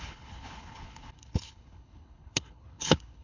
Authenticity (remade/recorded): remade